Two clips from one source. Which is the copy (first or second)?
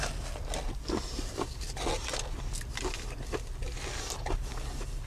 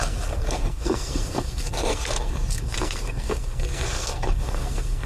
second